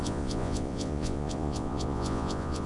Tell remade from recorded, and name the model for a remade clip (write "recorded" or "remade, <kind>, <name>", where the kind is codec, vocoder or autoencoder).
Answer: remade, vocoder, Vocos